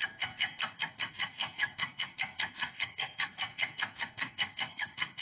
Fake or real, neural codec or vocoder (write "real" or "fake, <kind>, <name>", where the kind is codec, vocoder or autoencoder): fake, codec, SNAC